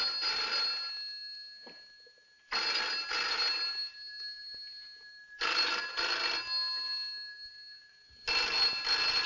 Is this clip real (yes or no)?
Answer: yes